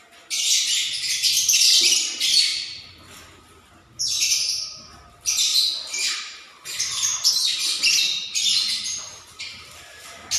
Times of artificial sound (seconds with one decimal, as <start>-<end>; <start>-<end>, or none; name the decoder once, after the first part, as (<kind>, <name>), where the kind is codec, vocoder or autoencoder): 2.5-3.7 (vocoder, BigVGAN v2)